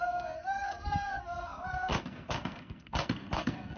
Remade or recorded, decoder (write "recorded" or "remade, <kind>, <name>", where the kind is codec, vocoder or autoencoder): remade, codec, SNAC